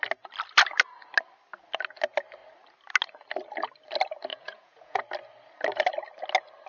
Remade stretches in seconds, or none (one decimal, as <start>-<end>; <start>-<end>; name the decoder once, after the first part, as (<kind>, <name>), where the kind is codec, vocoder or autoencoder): 4.3-5.0 (vocoder, Vocos)